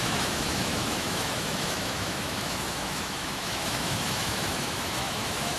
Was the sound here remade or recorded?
remade